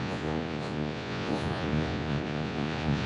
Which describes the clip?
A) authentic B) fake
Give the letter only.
B